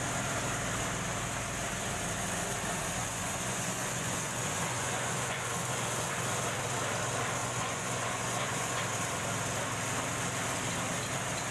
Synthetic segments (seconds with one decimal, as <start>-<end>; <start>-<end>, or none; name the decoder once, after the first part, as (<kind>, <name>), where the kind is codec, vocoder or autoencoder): 3.0-6.2 (vocoder, Vocos); 7.4-8.8